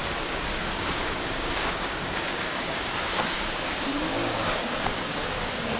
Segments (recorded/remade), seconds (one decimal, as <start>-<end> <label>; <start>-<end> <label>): 0.0-5.8 remade